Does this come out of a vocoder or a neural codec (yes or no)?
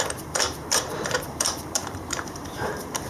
yes